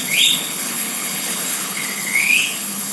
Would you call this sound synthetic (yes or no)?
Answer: yes